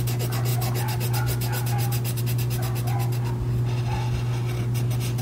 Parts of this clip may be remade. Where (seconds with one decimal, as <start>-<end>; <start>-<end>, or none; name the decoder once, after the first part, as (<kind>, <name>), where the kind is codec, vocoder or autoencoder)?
none